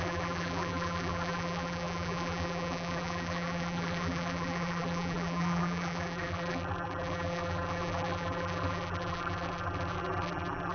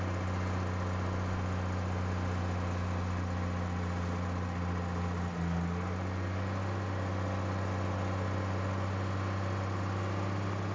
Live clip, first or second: second